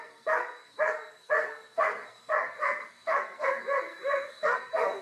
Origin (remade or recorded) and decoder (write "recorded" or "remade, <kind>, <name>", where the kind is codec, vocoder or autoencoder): remade, codec, SNAC